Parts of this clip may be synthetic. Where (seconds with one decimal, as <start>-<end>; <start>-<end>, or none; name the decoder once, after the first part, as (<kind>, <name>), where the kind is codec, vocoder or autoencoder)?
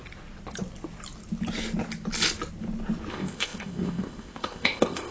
3.1-5.1 (codec, ZipCodec)